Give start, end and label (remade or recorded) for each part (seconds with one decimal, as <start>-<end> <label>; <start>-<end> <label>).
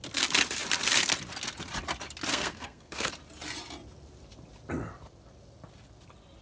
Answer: 0.0-2.3 recorded; 2.3-3.1 remade; 3.1-6.4 recorded